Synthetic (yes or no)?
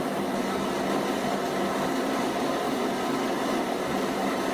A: no